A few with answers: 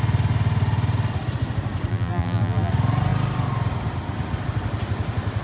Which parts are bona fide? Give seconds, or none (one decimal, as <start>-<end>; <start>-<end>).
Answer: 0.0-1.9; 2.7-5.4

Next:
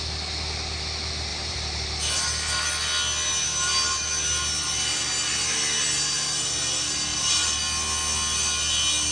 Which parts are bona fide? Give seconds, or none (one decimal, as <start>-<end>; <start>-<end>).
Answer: 0.0-1.3; 2.7-7.1; 7.6-9.1

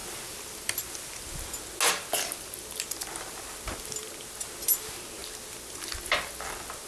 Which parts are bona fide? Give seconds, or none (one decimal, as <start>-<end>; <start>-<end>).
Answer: 0.0-6.9

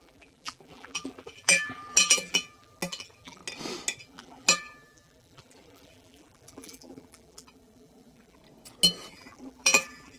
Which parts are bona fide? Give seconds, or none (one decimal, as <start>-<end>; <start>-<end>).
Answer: 3.4-4.0; 8.4-9.1

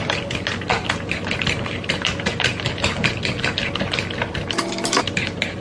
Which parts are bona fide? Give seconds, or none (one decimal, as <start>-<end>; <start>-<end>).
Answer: 0.0-0.7; 2.7-5.6